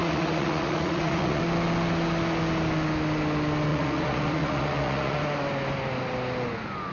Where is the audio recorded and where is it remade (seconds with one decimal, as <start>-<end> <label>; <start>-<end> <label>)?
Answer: 0.0-1.4 remade; 1.4-3.7 recorded; 3.7-5.2 remade; 5.2-6.9 recorded